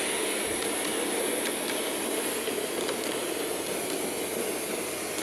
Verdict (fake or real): real